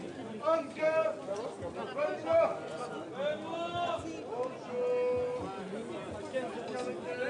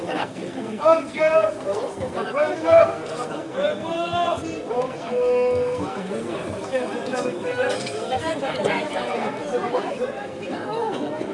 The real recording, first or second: first